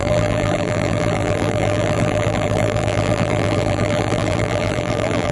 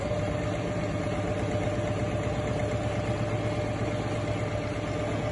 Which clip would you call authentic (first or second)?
second